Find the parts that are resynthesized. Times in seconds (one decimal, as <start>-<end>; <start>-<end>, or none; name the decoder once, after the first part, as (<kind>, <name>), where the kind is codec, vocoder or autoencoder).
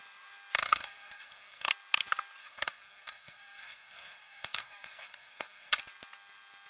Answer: 0.6-1.7 (codec, SNAC); 2.4-5.8